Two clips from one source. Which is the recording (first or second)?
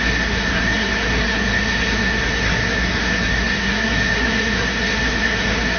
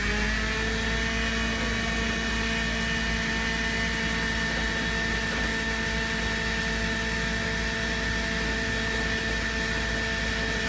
second